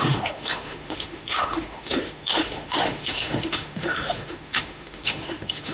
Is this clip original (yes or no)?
no